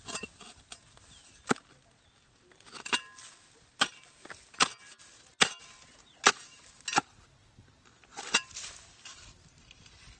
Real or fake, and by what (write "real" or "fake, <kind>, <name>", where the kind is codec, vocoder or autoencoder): real